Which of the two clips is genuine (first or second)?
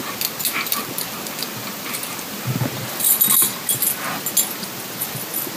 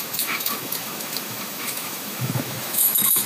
first